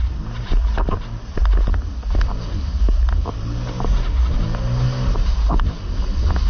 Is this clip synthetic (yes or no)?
no